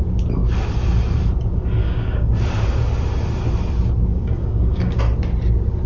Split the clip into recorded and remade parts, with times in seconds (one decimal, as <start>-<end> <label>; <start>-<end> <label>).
0.0-1.8 recorded; 1.8-2.3 remade; 2.3-4.1 recorded; 4.1-5.0 remade; 5.0-5.9 recorded